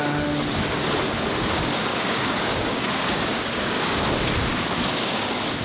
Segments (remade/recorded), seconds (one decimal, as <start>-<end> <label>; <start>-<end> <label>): 0.0-1.9 recorded; 1.9-4.0 remade; 4.0-4.5 recorded; 4.5-5.6 remade